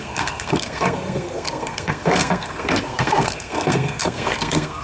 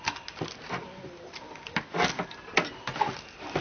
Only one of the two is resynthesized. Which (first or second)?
first